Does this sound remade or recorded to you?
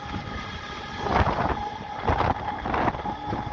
recorded